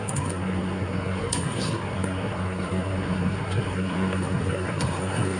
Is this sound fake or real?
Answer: fake